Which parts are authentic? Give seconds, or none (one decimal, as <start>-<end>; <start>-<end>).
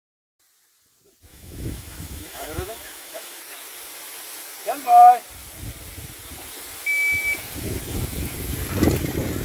0.0-1.3; 3.4-9.4